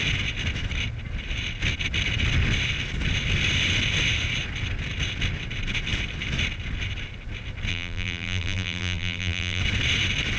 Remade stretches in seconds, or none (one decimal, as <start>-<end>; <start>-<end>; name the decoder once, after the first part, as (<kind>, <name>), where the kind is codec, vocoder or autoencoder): 7.7-9.6 (vocoder, BigVGAN v2)